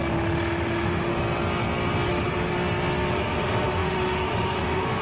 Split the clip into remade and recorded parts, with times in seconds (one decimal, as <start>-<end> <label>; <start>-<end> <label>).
0.0-1.1 remade; 1.1-2.1 recorded; 2.1-2.5 remade; 2.5-3.1 recorded; 3.1-5.0 remade

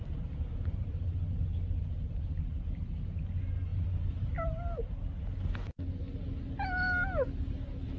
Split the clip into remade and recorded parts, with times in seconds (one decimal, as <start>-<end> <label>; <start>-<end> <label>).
0.0-8.0 recorded

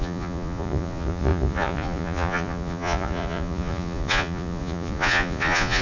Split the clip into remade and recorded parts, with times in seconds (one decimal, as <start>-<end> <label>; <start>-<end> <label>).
0.0-5.8 remade